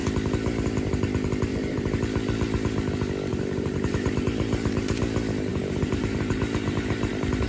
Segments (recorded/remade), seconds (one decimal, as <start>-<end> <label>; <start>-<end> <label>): 0.0-1.5 recorded; 1.5-2.0 remade; 2.0-3.3 recorded; 3.3-5.0 remade; 5.0-5.5 recorded; 5.5-7.1 remade; 7.1-7.5 recorded